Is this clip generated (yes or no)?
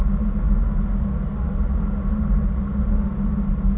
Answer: no